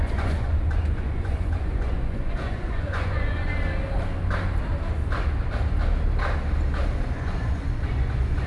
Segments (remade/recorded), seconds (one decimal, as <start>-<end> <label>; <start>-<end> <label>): 0.0-3.5 remade; 3.5-7.0 recorded; 7.0-8.5 remade